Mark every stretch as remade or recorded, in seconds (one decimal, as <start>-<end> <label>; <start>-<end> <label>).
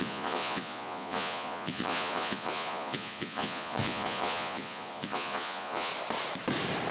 0.0-5.9 remade; 5.9-6.9 recorded